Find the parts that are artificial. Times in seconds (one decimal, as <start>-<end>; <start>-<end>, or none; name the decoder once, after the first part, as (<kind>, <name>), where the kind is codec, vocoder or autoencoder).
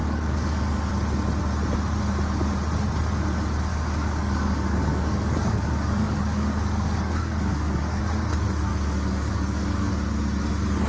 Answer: 0.0-0.9 (codec, DAC); 3.7-8.0; 8.7-9.9